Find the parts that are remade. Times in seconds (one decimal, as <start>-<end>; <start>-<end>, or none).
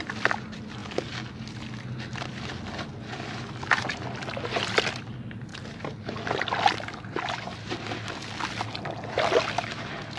none